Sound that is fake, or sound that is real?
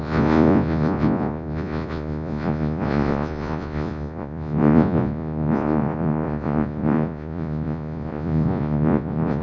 fake